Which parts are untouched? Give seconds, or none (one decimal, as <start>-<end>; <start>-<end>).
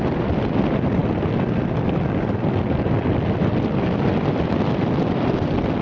0.0-5.8